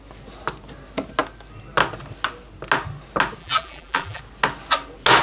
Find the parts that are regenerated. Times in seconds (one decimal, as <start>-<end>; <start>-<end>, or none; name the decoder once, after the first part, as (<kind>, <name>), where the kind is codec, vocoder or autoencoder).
3.4-4.2 (vocoder, BigVGAN v2)